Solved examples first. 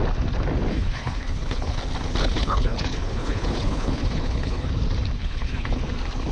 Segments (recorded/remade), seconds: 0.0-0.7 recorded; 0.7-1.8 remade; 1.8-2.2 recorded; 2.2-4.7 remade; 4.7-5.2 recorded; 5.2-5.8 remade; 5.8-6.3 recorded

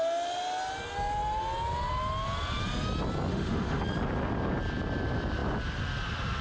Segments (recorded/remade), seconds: 0.0-3.3 recorded; 3.3-3.8 remade; 3.8-6.4 recorded

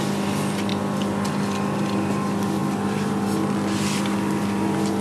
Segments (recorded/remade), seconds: 0.0-5.0 recorded

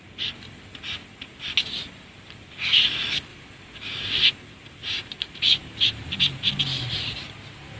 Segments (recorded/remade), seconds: 0.0-3.3 recorded; 3.3-4.2 remade; 4.2-4.8 recorded; 4.8-6.6 remade; 6.6-7.8 recorded

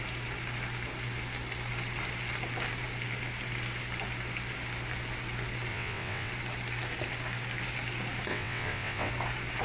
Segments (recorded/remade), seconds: 0.0-5.7 recorded; 5.7-6.3 remade; 6.3-8.3 recorded; 8.3-9.1 remade; 9.1-9.6 recorded

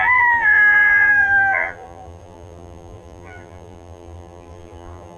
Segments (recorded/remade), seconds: 0.0-5.2 remade